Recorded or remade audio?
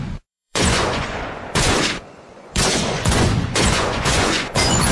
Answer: remade